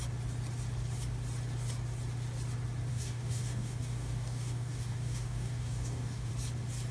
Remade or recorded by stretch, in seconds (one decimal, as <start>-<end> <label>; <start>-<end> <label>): 0.0-2.9 recorded; 2.9-6.3 remade; 6.3-6.9 recorded